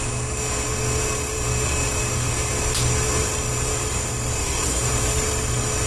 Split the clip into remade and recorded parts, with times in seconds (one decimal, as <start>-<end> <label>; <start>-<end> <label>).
0.0-4.4 recorded; 4.4-4.9 remade; 4.9-5.9 recorded